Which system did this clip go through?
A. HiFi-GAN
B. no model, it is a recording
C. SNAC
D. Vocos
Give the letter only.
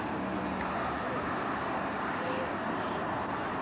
B